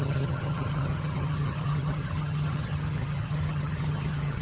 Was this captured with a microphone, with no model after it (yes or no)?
no